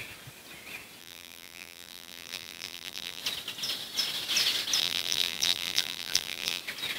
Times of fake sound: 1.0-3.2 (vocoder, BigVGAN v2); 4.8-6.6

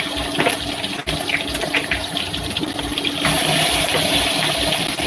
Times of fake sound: 2.0-2.5 (vocoder, BigVGAN v2)

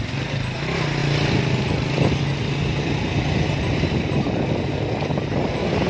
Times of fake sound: none

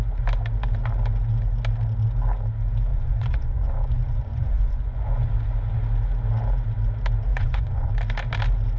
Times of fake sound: 2.9-5.3 (vocoder, Vocos); 7.3-7.9

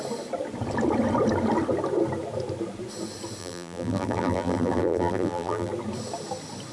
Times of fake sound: 3.4-5.7 (vocoder, BigVGAN v2)

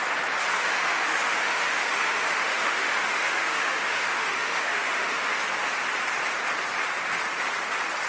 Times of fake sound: 0.5-5.4 (autoencoder, DAC-VAE)

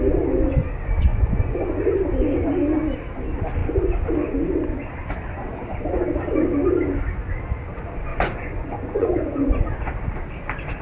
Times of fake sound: 1.1-1.8 (vocoder, Vocos); 8.1-9.6